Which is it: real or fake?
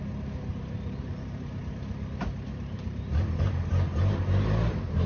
fake